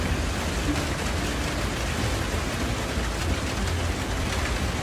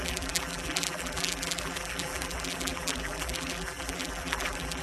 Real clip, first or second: first